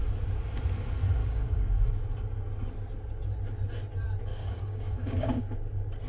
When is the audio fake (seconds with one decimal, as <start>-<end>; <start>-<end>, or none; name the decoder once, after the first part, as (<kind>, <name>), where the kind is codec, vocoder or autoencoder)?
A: 1.2-1.9 (codec, DAC); 4.3-5.4